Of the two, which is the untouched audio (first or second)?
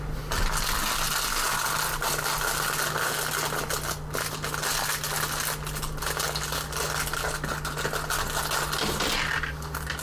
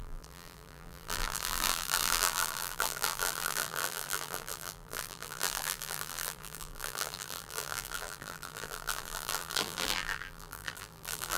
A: first